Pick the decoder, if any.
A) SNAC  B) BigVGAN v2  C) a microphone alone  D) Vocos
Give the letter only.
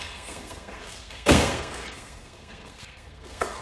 A